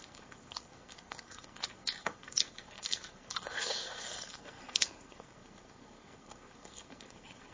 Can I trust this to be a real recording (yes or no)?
no